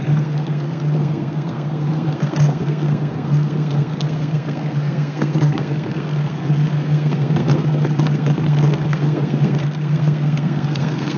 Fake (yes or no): yes